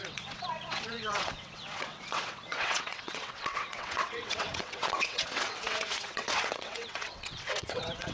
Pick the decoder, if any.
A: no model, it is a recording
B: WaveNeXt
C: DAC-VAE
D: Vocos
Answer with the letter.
B